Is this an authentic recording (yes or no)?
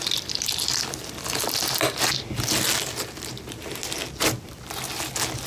yes